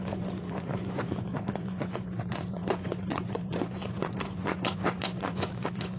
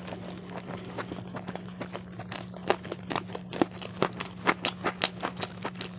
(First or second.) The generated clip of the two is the first